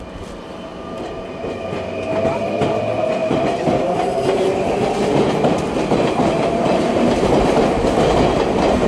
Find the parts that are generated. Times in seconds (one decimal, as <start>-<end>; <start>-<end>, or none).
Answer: 3.2-7.3